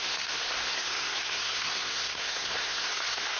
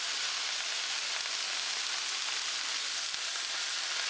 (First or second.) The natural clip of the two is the second